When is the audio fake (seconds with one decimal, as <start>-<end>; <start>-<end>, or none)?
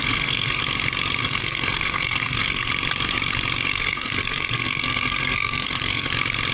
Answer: 0.0-0.6; 1.2-2.7; 3.7-6.1